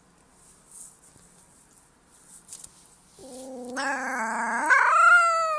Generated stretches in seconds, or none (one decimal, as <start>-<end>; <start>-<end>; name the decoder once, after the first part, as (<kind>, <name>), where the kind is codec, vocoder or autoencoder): none